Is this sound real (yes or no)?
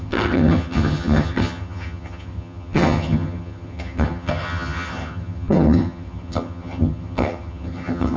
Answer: no